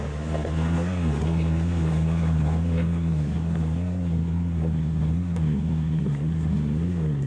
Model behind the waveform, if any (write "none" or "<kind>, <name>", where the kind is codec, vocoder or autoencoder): codec, SNAC